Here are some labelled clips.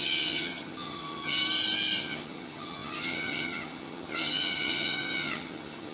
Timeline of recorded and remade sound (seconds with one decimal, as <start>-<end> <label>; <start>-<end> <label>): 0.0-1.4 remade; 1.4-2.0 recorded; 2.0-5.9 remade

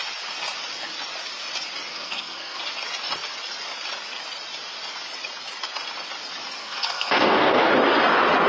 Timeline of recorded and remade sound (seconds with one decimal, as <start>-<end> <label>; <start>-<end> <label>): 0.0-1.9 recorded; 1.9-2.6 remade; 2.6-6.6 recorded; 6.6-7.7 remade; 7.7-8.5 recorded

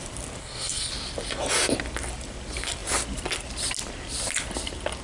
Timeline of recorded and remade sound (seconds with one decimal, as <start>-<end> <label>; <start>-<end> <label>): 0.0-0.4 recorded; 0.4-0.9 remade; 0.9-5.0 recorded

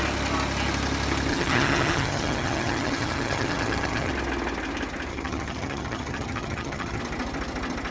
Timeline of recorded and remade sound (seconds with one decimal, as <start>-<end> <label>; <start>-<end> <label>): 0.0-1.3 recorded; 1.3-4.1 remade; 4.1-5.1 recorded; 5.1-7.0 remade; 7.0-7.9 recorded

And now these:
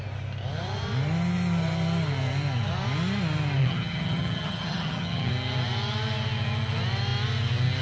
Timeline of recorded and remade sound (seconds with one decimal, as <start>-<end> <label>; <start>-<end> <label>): 0.0-3.6 recorded; 3.6-5.3 remade; 5.3-7.8 recorded